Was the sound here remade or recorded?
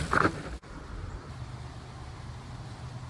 remade